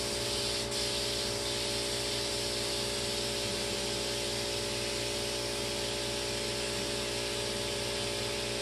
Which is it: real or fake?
real